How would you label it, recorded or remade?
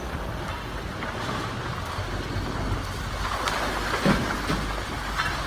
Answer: recorded